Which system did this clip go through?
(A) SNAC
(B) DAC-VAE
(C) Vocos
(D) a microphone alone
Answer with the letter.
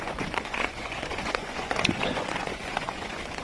C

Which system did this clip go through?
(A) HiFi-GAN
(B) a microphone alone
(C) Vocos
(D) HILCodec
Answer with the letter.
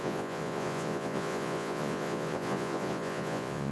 C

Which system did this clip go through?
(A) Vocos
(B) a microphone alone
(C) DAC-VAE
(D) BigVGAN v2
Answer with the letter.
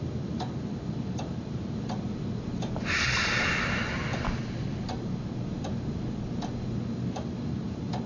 B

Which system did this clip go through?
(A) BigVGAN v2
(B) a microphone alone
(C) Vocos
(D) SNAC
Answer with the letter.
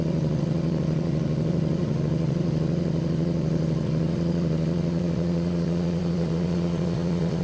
C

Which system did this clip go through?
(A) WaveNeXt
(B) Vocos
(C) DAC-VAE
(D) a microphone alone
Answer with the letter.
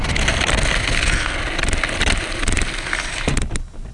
D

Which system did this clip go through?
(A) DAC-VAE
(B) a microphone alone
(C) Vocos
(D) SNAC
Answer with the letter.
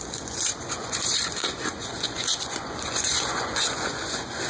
C